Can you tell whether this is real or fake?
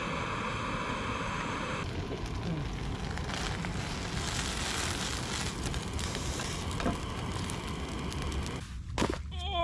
real